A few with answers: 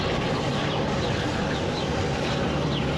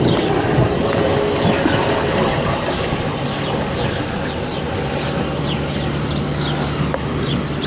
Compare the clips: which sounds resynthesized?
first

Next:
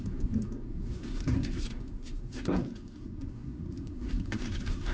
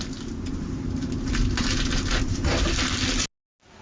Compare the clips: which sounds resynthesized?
first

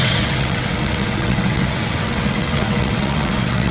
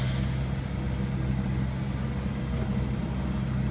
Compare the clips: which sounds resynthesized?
first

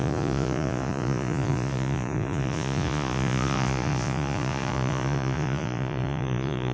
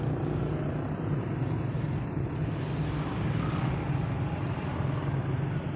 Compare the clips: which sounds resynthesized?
first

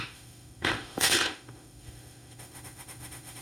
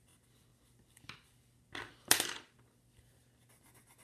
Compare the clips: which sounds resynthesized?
first